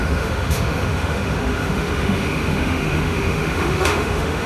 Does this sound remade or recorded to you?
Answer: remade